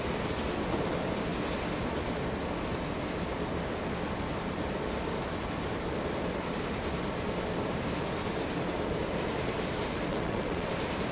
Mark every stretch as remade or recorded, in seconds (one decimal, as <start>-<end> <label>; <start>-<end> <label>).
0.0-10.1 recorded; 10.1-10.7 remade; 10.7-11.1 recorded